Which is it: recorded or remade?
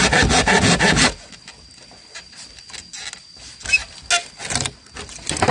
recorded